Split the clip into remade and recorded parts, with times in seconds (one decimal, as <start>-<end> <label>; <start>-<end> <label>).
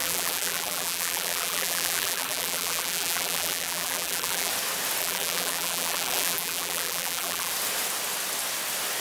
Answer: 0.0-4.5 remade; 4.5-5.0 recorded; 5.0-7.5 remade; 7.5-9.0 recorded